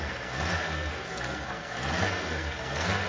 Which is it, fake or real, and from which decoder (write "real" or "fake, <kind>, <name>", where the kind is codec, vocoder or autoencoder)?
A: fake, codec, SNAC